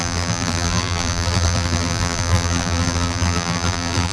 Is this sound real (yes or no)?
no